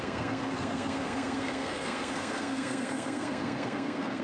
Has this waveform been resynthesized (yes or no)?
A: yes